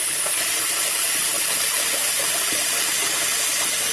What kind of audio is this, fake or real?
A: real